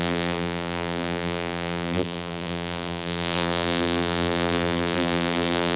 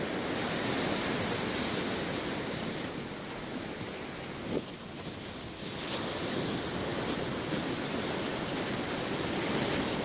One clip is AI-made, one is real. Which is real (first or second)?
second